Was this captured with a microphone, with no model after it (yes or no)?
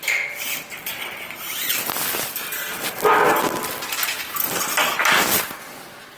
yes